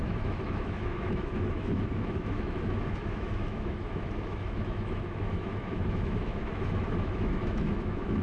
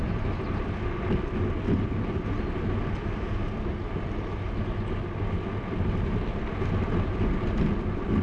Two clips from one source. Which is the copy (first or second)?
first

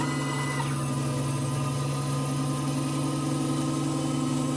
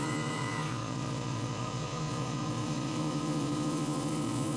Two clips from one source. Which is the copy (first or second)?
second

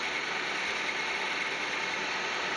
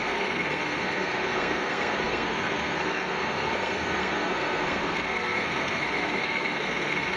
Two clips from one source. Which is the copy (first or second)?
second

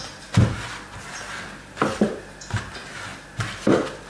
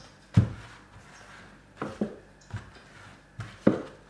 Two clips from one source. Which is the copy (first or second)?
second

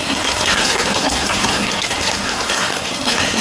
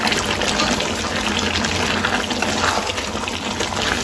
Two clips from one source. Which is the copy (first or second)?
first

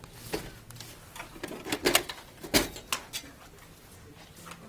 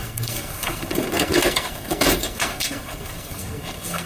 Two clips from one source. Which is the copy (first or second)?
second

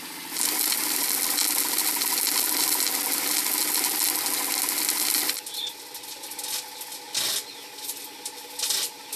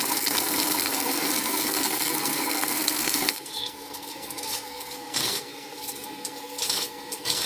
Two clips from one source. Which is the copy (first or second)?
second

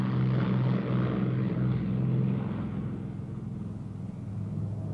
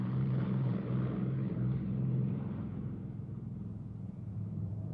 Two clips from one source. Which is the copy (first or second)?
second